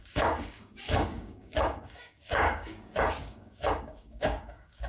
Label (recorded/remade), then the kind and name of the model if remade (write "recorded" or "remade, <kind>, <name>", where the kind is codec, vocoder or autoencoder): remade, codec, DAC